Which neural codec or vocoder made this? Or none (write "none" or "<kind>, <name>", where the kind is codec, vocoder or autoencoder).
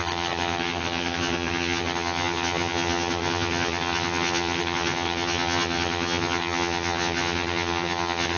vocoder, HiFi-GAN